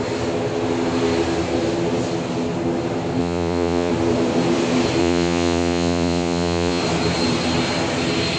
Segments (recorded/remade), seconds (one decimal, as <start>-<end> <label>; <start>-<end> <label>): 0.0-3.2 recorded; 3.2-3.9 remade; 3.9-5.0 recorded; 5.0-6.8 remade; 6.8-8.4 recorded